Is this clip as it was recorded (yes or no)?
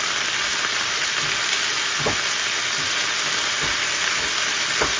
yes